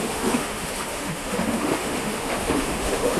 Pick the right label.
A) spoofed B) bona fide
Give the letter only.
A